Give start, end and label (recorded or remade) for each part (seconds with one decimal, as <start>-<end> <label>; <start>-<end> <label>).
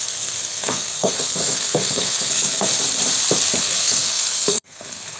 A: 0.0-2.7 remade; 2.7-3.6 recorded; 3.6-5.2 remade